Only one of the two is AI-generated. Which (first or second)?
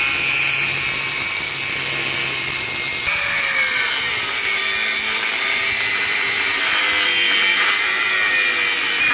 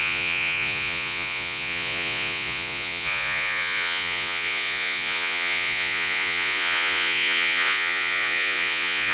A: second